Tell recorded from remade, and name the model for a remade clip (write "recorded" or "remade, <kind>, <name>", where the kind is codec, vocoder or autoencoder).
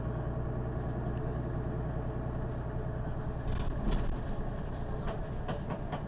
recorded